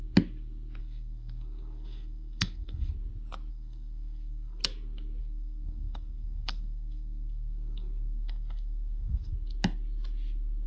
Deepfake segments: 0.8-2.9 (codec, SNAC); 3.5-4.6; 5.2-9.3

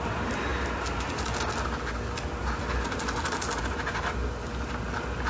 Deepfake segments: none

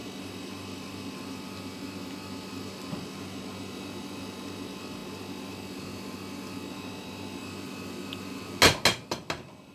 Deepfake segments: none

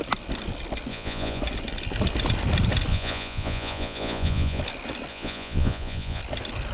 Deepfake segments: 0.9-1.4 (vocoder, Vocos); 2.9-4.6; 5.1-6.2

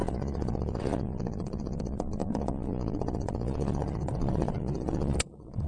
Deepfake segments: 0.0-5.7 (vocoder, Vocos)

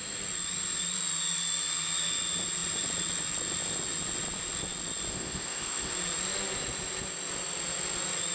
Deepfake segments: 5.1-5.9 (codec, ZipCodec)

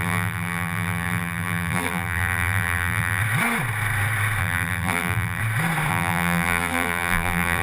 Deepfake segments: 0.0-3.2 (vocoder, BigVGAN v2); 4.4-5.4; 5.9-7.6